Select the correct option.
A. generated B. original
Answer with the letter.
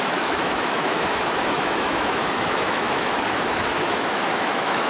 A